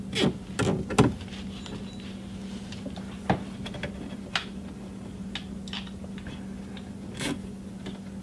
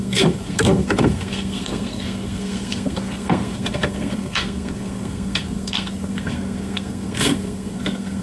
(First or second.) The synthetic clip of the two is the second